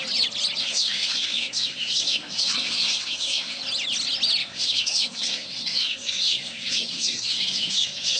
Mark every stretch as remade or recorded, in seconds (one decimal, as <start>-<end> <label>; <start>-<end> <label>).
0.0-0.6 recorded; 0.6-3.6 remade; 3.6-4.4 recorded; 4.4-8.2 remade